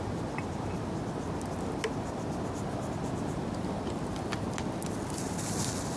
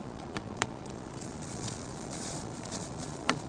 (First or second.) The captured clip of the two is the first